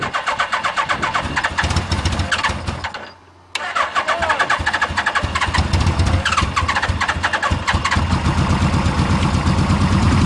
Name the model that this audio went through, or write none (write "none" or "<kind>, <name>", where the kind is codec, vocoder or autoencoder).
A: none